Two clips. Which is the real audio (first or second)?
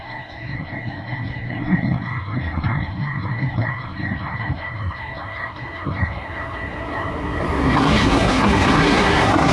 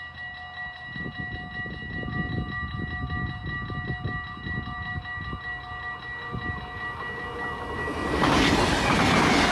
second